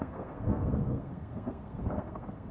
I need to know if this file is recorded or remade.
remade